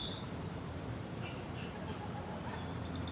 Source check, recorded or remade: remade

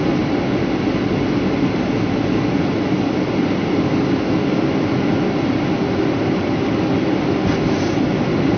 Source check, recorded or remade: recorded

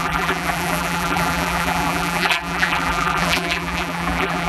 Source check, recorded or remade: remade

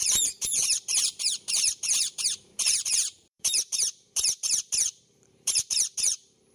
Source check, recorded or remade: remade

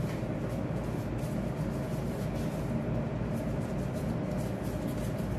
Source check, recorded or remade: recorded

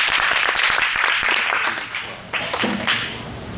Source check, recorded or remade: remade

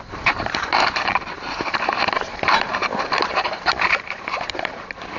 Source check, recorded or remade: remade